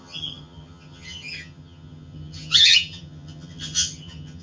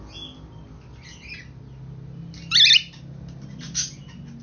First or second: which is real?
second